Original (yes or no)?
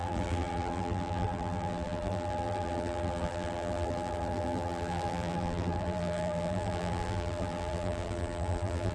no